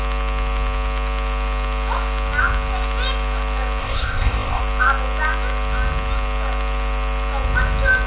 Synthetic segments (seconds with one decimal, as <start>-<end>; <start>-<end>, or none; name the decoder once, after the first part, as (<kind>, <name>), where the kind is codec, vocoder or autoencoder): 3.8-4.6 (codec, ZipCodec)